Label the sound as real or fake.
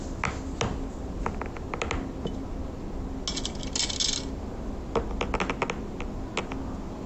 real